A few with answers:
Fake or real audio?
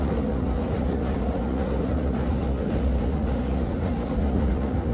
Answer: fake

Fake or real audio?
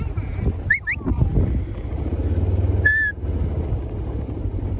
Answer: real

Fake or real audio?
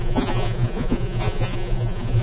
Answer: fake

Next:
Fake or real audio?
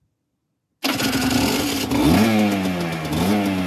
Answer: real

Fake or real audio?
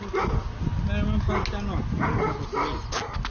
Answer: real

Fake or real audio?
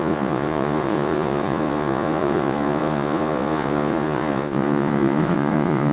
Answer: fake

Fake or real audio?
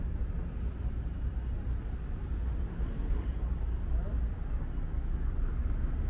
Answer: real